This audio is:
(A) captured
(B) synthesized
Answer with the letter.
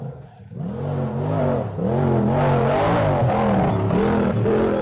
A